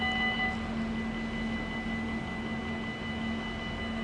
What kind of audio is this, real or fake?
real